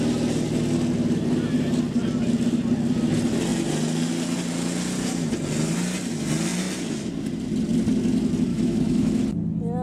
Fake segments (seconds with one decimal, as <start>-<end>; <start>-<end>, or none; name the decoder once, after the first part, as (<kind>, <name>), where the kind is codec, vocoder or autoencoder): 8.5-9.2 (autoencoder, DAC-VAE)

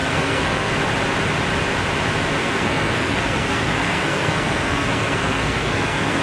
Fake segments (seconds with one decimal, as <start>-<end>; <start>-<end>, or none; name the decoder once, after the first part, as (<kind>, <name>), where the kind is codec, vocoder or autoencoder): 0.0-0.7 (codec, SNAC); 2.4-6.2

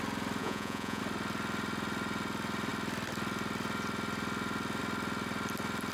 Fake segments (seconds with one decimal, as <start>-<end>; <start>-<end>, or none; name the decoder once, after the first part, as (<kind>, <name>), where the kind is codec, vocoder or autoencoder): 0.4-1.0 (vocoder, Vocos)